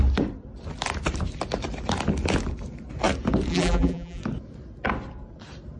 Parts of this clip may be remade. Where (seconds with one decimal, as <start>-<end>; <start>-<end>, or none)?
3.5-4.2